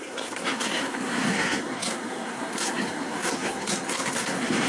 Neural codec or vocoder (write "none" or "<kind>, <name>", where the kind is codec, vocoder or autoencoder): codec, SNAC